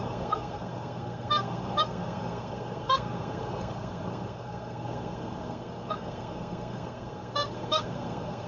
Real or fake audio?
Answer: fake